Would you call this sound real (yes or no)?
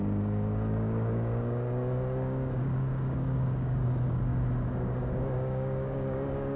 no